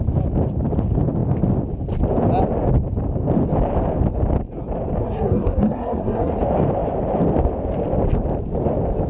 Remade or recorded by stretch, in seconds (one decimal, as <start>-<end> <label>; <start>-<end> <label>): 0.0-5.0 recorded; 5.0-6.3 remade; 6.3-9.1 recorded